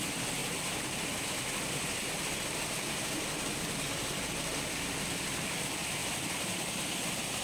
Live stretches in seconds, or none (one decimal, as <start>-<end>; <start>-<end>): 0.4-4.8